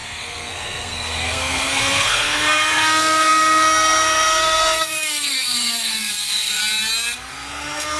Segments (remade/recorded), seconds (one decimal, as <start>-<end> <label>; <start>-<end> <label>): 0.0-6.6 remade; 6.6-7.3 recorded; 7.3-8.0 remade